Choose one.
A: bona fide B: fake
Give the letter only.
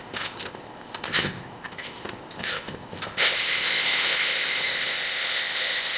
B